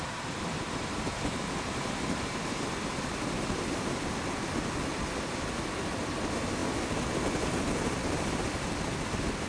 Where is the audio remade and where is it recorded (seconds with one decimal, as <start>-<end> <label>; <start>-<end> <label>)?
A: 0.0-9.5 recorded